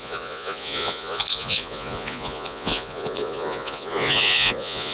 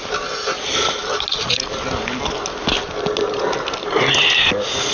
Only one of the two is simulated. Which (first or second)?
first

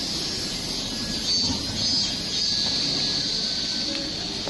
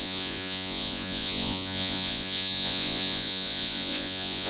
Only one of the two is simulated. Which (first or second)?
second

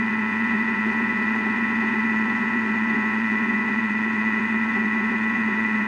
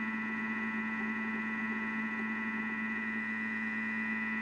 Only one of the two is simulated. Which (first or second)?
first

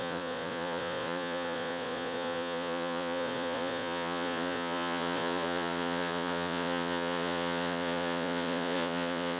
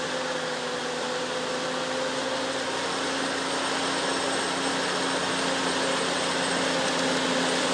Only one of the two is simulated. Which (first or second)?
first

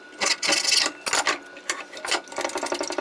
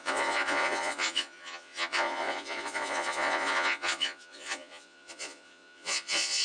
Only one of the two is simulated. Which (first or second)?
second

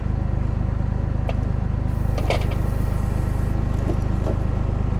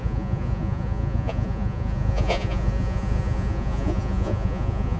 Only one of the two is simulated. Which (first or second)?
second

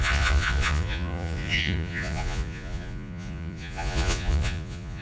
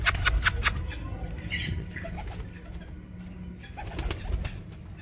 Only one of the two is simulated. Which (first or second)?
first